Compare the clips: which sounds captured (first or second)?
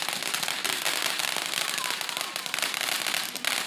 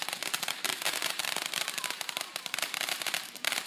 first